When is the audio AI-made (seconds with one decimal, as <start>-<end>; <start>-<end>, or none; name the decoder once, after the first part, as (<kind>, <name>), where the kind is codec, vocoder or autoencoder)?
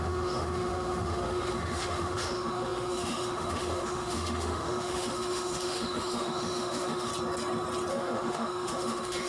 0.0-7.1 (autoencoder, DAC-VAE); 7.9-9.3